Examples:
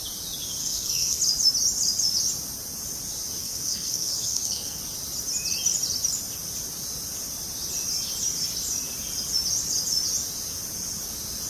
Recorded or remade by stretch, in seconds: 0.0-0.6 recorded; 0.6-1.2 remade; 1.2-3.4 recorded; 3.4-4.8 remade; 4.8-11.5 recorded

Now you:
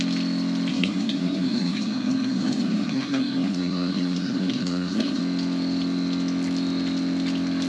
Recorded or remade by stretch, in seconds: 0.0-0.7 recorded; 0.7-5.2 remade; 5.2-7.7 recorded

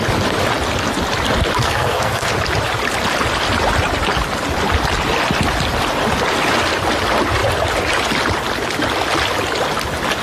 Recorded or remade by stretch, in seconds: 0.0-1.6 recorded; 1.6-2.3 remade; 2.3-10.2 recorded

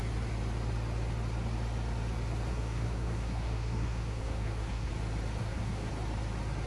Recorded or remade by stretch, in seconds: 0.0-2.5 recorded; 2.5-4.9 remade; 4.9-5.4 recorded; 5.4-5.9 remade; 5.9-6.7 recorded

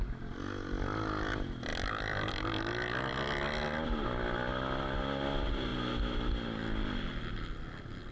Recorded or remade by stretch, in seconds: 0.0-8.1 recorded

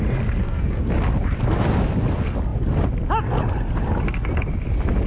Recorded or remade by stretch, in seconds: 0.0-0.4 recorded; 0.4-0.9 remade; 0.9-5.1 recorded

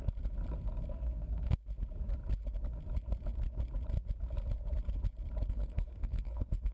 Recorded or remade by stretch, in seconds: 0.0-0.9 recorded; 0.9-1.6 remade; 1.6-5.5 recorded; 5.5-6.7 remade

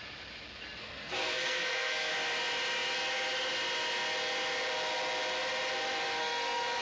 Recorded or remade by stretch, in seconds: 0.0-0.8 recorded; 0.8-2.1 remade; 2.1-6.2 recorded; 6.2-6.8 remade